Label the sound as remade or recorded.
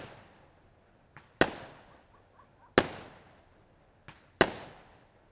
recorded